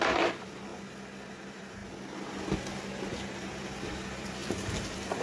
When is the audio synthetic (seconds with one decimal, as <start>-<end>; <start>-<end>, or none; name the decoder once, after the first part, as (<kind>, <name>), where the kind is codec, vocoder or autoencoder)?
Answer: 0.0-0.7 (vocoder, BigVGAN v2); 1.3-1.8; 3.1-5.2